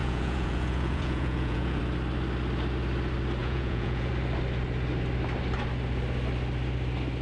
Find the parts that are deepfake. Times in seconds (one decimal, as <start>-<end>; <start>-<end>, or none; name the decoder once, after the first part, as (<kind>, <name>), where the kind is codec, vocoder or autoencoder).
0.0-1.8 (vocoder, Vocos); 3.4-4.1